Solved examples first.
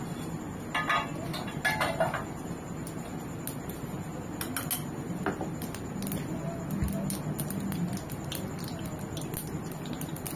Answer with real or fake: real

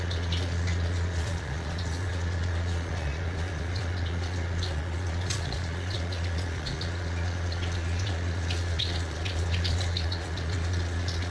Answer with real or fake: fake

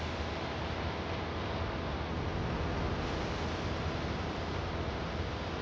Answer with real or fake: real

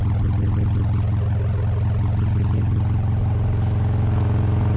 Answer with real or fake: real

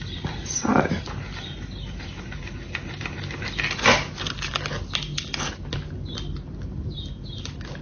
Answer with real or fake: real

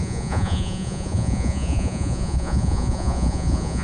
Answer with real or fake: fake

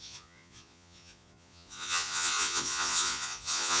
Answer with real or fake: fake